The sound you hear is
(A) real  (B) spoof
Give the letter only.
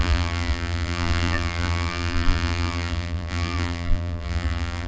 B